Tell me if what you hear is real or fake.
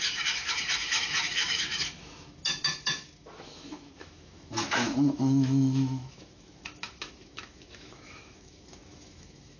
fake